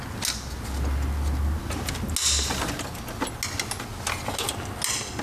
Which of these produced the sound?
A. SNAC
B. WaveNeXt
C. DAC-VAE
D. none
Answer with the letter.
D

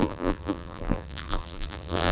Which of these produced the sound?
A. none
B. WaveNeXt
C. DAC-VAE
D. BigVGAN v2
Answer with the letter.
D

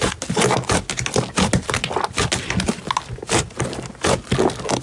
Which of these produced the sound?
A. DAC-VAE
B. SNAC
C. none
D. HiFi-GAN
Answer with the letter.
C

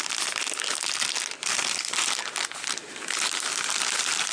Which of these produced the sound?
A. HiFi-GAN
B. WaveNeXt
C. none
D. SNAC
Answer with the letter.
C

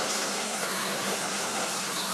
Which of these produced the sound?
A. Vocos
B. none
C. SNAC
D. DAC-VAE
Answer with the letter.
C